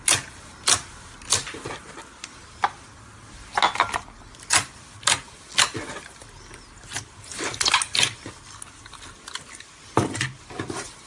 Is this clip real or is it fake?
real